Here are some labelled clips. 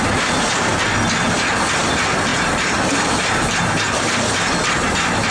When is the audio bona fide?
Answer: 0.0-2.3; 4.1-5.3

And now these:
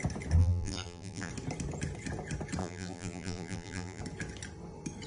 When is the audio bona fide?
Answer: 0.0-0.4; 1.3-2.6; 4.0-5.1

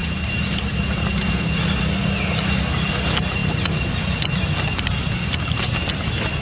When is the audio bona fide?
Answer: 0.0-6.4

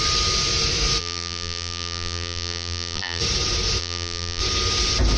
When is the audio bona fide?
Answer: 0.0-1.0; 3.2-3.8; 4.4-5.2

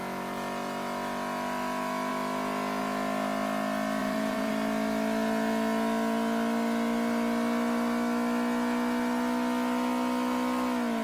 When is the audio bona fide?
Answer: 0.0-4.0; 4.5-11.0